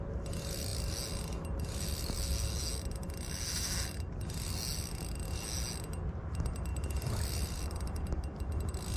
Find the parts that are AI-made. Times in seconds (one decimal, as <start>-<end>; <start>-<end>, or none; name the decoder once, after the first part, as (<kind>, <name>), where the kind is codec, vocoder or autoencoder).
none